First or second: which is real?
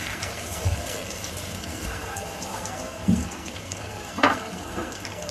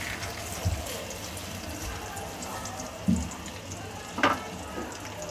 second